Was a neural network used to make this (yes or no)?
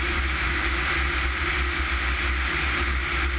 no